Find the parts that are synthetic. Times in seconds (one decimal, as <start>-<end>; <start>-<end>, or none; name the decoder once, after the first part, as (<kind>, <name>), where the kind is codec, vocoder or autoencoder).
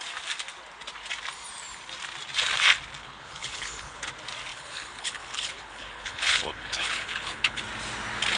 3.0-4.1 (codec, HILCodec); 4.5-7.6